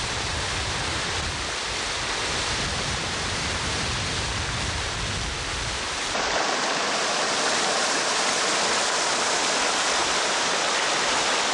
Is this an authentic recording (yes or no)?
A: yes